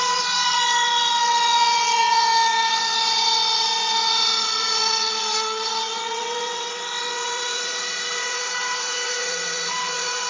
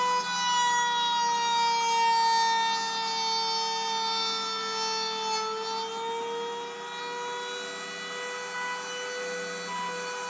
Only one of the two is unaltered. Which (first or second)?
second